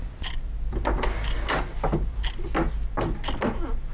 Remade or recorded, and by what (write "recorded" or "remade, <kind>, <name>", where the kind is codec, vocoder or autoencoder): recorded